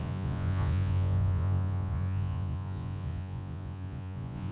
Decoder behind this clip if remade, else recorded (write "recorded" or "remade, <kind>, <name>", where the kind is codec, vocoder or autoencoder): remade, vocoder, Vocos